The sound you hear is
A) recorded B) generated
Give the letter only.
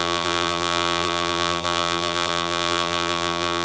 B